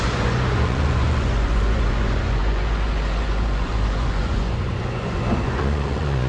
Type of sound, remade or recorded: remade